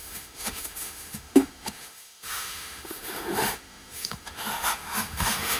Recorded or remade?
remade